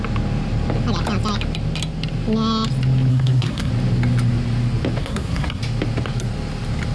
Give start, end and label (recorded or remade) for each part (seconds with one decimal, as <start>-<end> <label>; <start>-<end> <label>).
0.0-3.1 recorded; 3.1-3.7 remade; 3.7-5.0 recorded; 5.0-5.6 remade; 5.6-6.9 recorded